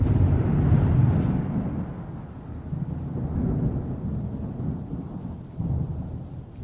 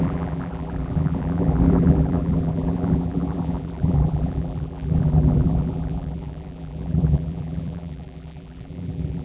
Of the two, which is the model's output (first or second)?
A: second